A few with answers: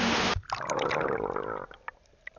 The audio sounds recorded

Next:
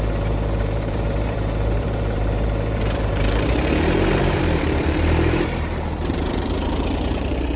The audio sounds remade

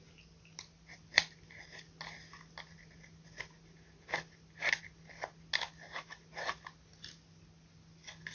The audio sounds recorded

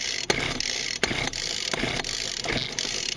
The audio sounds recorded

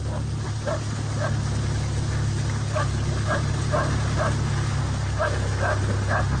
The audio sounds recorded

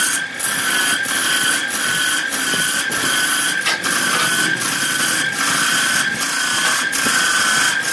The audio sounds recorded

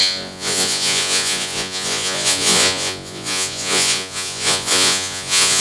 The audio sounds remade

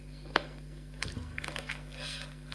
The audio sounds remade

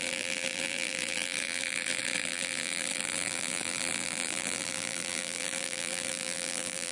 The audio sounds remade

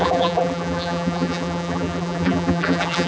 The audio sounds remade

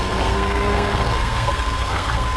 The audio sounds remade